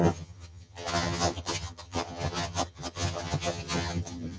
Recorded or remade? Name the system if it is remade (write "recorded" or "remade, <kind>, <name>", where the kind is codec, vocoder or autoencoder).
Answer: remade, vocoder, HiFi-GAN